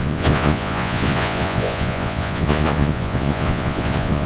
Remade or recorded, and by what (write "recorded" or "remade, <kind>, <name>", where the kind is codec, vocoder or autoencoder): remade, vocoder, Vocos